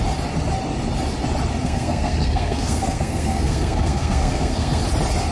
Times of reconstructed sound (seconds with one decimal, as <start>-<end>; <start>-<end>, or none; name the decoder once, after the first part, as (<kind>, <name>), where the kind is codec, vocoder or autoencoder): 1.6-4.8 (codec, SNAC)